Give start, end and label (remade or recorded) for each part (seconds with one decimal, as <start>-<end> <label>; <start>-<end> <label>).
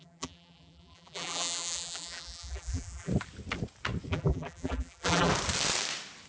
0.0-3.1 remade; 3.1-4.1 recorded; 4.1-5.3 remade; 5.3-6.3 recorded